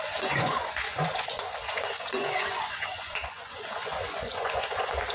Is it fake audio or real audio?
fake